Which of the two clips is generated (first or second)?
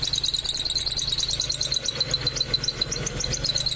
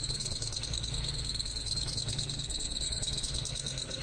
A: second